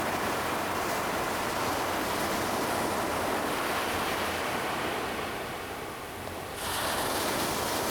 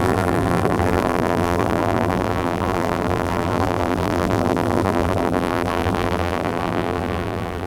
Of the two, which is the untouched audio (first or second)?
first